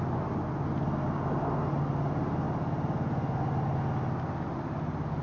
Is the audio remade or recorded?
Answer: recorded